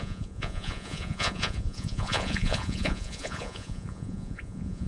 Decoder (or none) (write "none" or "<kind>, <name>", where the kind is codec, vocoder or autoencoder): vocoder, Vocos